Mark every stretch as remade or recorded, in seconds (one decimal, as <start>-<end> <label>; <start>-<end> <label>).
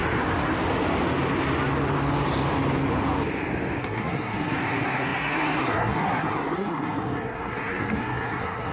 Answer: 0.0-3.8 recorded; 3.8-8.7 remade